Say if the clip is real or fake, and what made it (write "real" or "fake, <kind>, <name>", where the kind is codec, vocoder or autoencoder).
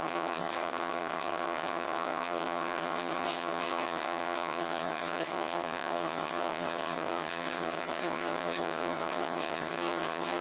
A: fake, vocoder, HiFi-GAN